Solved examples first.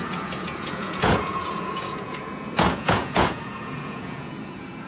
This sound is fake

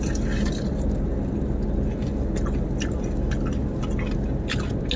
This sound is real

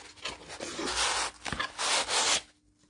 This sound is real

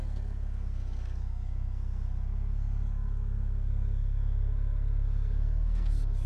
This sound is fake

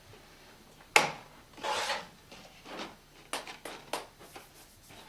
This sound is real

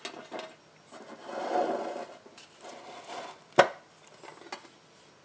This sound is real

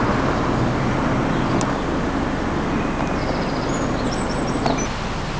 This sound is real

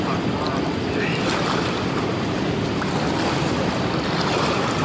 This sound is fake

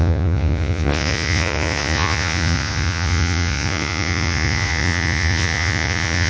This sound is fake